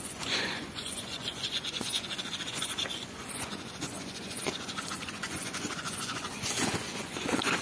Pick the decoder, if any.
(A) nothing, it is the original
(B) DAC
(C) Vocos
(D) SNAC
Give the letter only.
C